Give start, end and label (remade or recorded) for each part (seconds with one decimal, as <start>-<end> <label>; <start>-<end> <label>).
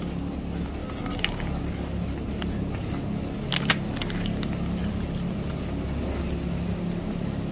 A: 0.0-7.5 recorded